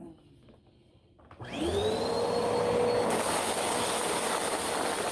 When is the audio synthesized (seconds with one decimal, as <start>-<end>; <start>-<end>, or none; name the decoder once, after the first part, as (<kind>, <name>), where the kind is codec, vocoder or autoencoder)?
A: none